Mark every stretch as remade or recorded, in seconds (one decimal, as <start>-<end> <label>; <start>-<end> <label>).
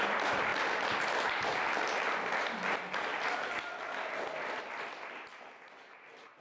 0.0-6.4 recorded